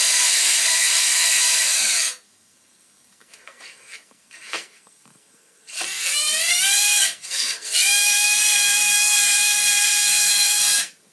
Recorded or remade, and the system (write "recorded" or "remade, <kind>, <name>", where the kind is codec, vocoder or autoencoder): remade, codec, SNAC